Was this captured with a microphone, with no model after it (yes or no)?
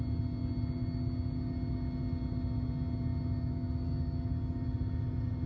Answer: yes